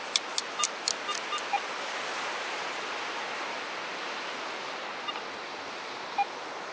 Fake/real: real